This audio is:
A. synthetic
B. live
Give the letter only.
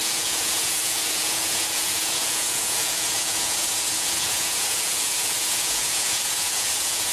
A